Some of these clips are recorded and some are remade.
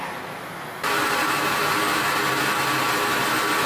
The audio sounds recorded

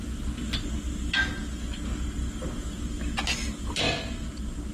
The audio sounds recorded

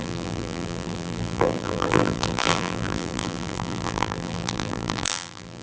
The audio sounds remade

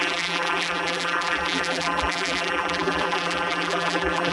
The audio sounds remade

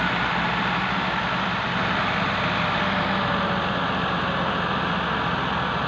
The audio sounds recorded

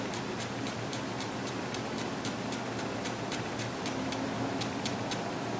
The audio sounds remade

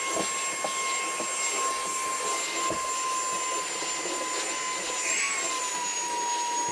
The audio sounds recorded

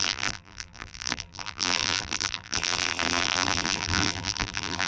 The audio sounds remade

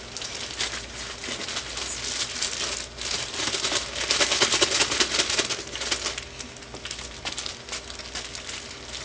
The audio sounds recorded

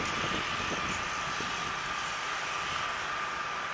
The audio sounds recorded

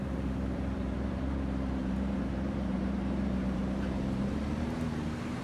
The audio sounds remade